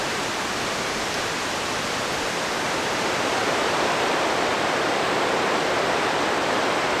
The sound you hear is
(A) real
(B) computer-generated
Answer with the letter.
A